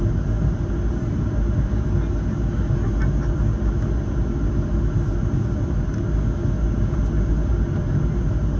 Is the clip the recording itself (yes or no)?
yes